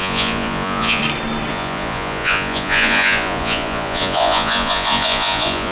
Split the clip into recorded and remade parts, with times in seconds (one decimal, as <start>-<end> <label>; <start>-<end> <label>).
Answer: 0.0-1.0 remade; 1.0-1.5 recorded; 1.5-5.7 remade